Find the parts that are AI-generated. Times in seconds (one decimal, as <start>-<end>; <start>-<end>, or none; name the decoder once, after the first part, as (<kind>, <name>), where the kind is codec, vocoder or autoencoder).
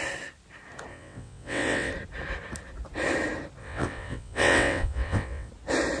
0.9-1.9 (vocoder, WaveNeXt); 3.6-5.5